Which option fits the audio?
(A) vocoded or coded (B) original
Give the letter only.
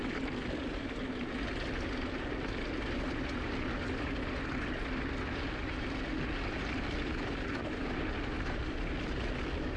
B